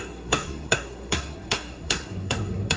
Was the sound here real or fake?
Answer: fake